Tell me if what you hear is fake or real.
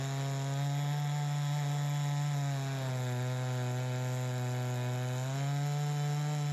real